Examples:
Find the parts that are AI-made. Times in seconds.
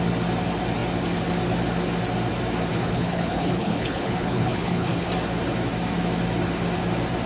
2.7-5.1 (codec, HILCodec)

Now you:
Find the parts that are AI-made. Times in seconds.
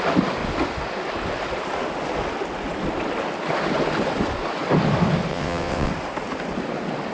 5.3-5.9 (vocoder, WaveNeXt)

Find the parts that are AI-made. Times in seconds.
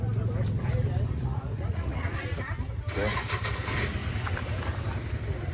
1.2-2.4 (vocoder, Vocos)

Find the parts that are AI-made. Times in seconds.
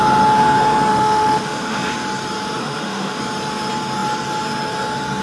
0.9-1.9 (autoencoder, DAC-VAE); 2.6-3.2